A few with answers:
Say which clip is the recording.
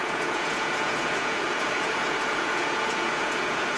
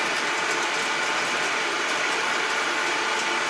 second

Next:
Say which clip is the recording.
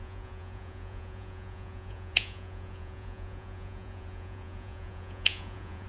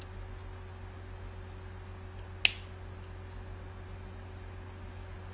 second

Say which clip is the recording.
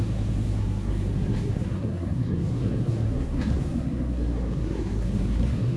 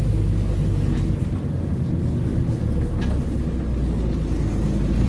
second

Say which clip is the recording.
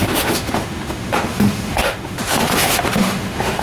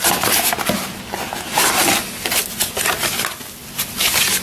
second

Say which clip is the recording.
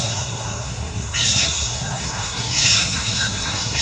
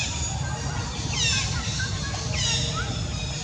second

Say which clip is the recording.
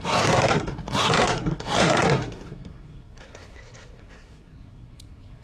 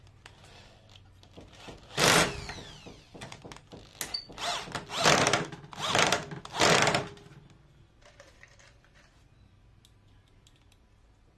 second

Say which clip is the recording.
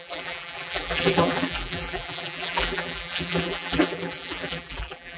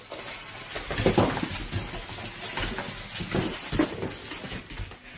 second